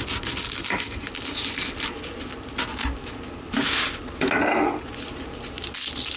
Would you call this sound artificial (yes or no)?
no